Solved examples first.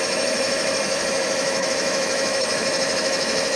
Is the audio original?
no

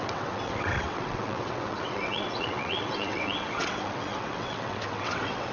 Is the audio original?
no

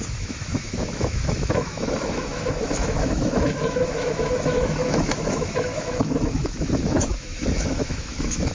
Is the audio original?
no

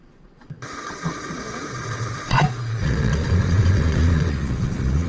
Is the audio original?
no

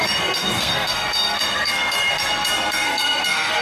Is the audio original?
no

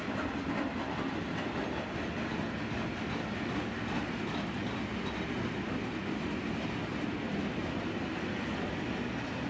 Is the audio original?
yes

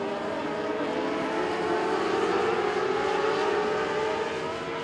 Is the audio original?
yes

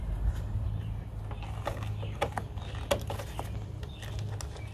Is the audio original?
yes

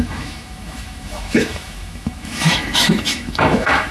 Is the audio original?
no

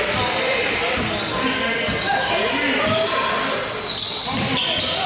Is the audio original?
yes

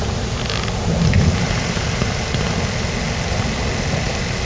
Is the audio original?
yes